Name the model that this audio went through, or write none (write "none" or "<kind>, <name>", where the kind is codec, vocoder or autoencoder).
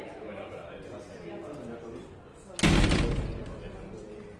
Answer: none